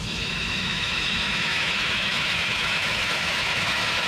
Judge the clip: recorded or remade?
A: remade